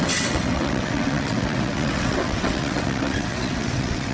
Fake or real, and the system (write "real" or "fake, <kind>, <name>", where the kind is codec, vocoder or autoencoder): fake, vocoder, WaveNeXt